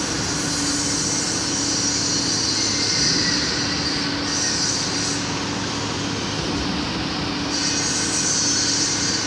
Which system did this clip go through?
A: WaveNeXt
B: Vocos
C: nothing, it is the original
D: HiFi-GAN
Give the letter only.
C